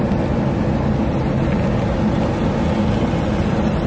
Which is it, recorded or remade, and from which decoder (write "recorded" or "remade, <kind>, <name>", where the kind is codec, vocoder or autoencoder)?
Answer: recorded